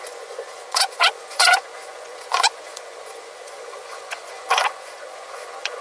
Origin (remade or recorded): remade